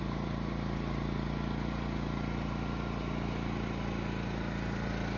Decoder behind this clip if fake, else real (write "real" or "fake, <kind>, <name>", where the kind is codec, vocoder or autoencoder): real